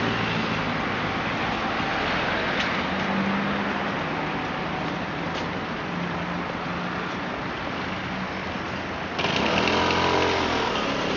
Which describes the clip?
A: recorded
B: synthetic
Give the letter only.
A